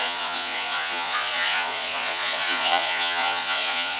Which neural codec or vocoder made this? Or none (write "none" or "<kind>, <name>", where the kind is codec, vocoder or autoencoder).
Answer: vocoder, Vocos